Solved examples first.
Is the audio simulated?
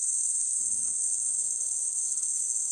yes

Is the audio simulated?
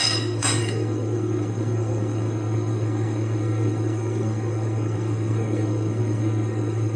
yes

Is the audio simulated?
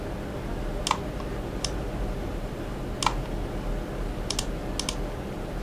no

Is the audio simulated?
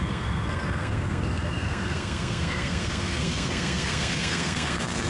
yes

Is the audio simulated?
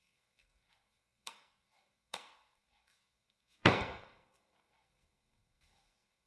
yes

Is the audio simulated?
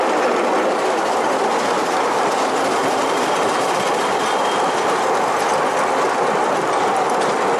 no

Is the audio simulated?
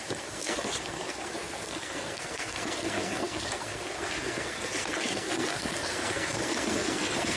yes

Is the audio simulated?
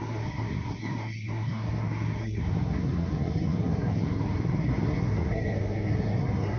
yes